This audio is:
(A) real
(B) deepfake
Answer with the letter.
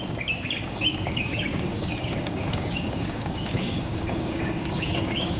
B